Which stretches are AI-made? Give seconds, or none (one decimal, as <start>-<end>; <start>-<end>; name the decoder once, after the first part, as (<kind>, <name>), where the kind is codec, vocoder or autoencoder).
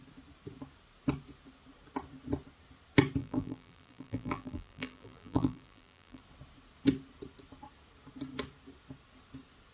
3.2-6.2 (vocoder, BigVGAN v2)